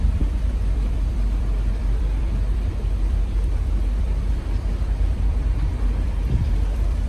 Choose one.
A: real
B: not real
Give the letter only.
B